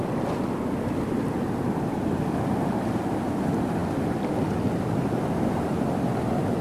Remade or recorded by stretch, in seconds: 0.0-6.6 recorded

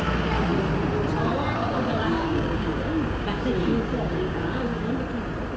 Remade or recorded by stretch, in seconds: 0.0-2.0 recorded; 2.0-4.9 remade; 4.9-5.6 recorded

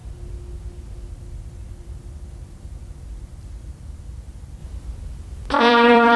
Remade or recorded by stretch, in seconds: 0.0-1.1 recorded; 1.1-4.6 remade; 4.6-5.6 recorded; 5.6-6.2 remade

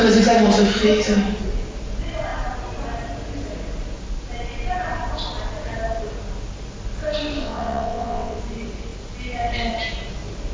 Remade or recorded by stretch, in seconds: 0.0-7.4 recorded; 7.4-8.4 remade; 8.4-10.5 recorded

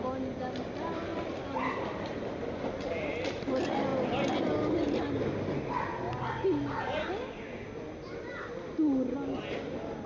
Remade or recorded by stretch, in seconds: 0.0-1.1 recorded; 1.1-2.6 remade; 2.6-10.1 recorded

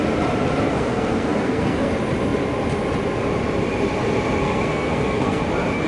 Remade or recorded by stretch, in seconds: 0.0-0.7 recorded; 0.7-1.9 remade; 1.9-4.4 recorded; 4.4-5.4 remade; 5.4-5.9 recorded

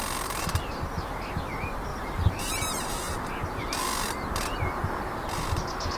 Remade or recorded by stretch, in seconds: 0.0-1.9 recorded; 1.9-3.1 remade; 3.1-6.0 recorded

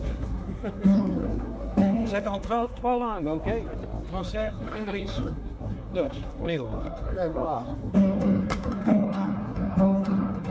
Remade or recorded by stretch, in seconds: 0.0-3.4 remade; 3.4-4.2 recorded; 4.2-10.5 remade